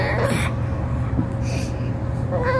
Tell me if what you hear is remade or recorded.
recorded